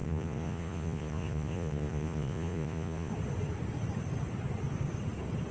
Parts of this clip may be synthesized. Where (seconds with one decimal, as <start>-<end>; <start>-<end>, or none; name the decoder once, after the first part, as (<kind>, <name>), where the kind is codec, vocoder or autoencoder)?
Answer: 0.0-3.1 (vocoder, Vocos)